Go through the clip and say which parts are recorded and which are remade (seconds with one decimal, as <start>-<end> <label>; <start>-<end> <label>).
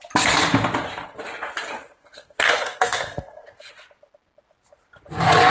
0.0-2.0 recorded; 2.0-3.7 remade; 3.7-5.5 recorded